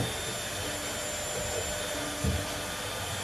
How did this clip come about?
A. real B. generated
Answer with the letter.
A